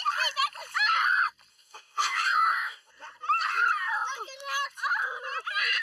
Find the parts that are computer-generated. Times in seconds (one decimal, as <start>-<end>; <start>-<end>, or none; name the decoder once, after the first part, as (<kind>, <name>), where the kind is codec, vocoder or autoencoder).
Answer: 1.5-2.9 (codec, DAC)